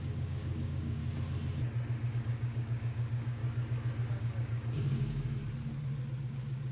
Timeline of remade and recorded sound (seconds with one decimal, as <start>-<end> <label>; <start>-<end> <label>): 0.0-1.0 remade; 1.0-2.1 recorded; 2.1-3.4 remade; 3.4-4.1 recorded; 4.1-5.4 remade; 5.4-6.2 recorded; 6.2-6.7 remade